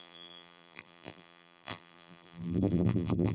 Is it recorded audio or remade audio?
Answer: remade